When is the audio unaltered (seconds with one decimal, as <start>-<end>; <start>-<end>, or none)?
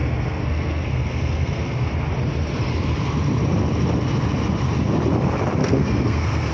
1.9-5.6